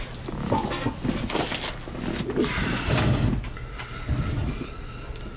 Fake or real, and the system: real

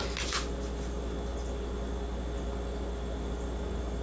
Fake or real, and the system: real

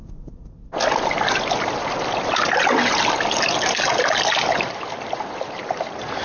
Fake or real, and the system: real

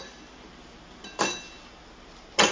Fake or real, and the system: real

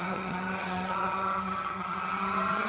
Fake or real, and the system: fake, vocoder, HiFi-GAN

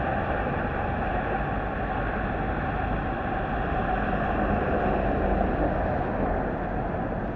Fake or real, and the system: real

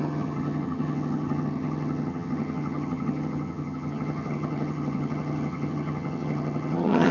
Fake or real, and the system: fake, vocoder, HiFi-GAN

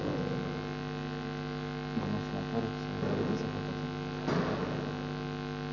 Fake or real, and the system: real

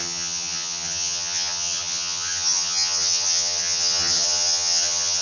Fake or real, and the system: fake, vocoder, HiFi-GAN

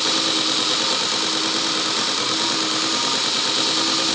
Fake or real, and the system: real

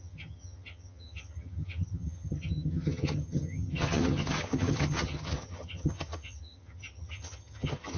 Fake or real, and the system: fake, vocoder, HiFi-GAN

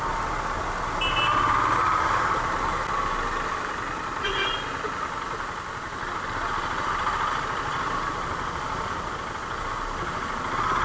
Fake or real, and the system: real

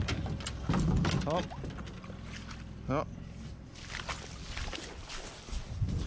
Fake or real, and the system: real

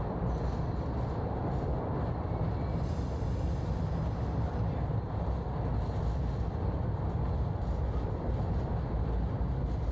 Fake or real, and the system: real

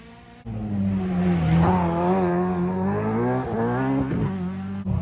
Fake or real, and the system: real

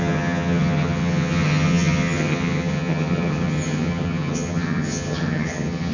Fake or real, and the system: fake, vocoder, HiFi-GAN